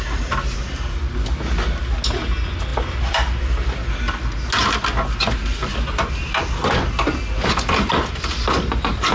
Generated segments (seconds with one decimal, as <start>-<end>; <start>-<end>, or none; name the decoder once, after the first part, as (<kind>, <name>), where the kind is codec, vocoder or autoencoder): none